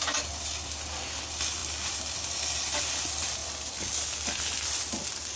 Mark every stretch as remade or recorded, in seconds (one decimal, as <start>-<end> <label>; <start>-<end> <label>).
0.0-5.4 recorded